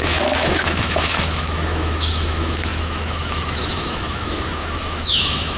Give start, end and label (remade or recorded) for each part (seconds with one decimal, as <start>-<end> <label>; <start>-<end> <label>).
0.0-5.6 remade